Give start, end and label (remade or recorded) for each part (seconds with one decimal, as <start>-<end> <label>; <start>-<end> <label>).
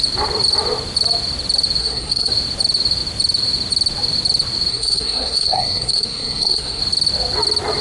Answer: 0.0-1.8 recorded; 1.8-2.3 remade; 2.3-4.7 recorded; 4.7-6.8 remade; 6.8-7.8 recorded